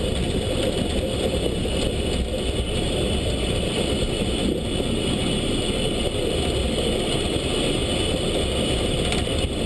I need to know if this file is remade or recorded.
recorded